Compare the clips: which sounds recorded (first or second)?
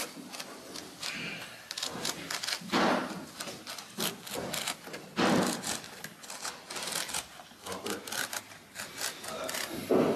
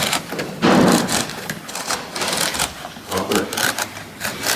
first